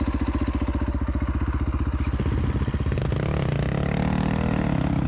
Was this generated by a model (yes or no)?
no